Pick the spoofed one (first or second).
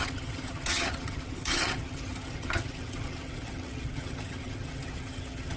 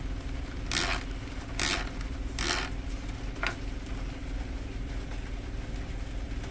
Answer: first